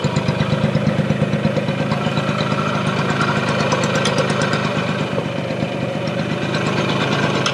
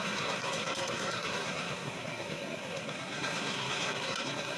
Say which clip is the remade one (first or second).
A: second